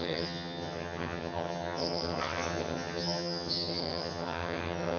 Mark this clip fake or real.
fake